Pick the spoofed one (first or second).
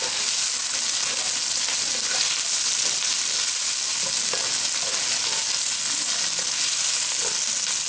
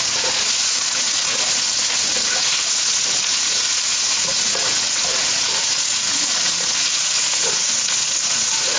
second